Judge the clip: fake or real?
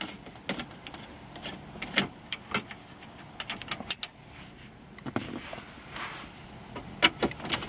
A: real